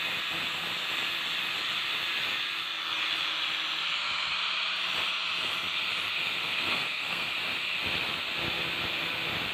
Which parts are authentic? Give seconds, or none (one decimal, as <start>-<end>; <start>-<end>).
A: 0.0-6.4; 7.3-9.5